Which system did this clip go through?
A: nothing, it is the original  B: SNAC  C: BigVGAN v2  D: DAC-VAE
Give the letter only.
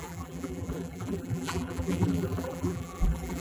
C